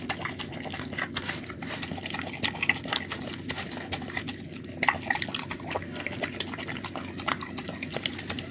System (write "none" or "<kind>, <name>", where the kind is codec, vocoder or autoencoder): none